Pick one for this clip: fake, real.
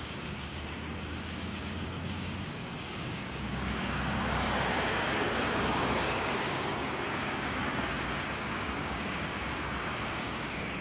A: fake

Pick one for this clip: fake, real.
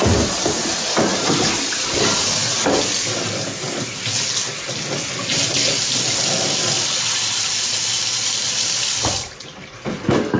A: real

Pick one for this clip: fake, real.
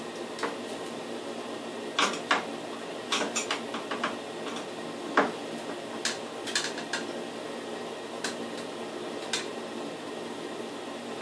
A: real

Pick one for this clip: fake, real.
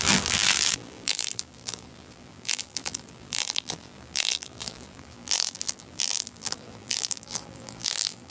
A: fake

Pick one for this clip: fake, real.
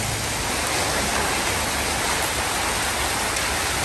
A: real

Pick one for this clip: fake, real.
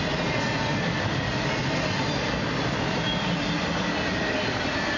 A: real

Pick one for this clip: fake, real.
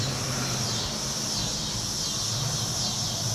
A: real